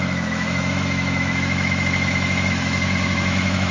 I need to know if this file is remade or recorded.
remade